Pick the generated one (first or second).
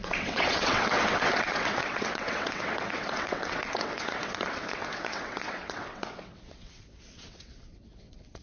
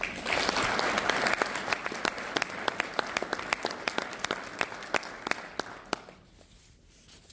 first